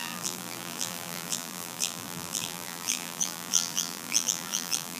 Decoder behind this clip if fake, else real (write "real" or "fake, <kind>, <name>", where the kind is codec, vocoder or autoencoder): fake, vocoder, BigVGAN v2